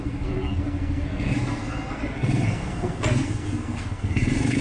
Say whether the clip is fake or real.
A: fake